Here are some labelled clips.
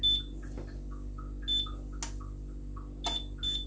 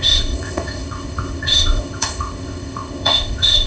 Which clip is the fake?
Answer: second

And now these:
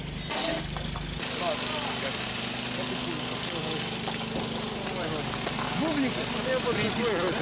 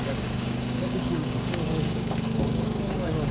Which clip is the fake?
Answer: second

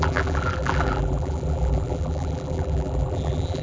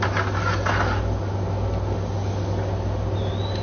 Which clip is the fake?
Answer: first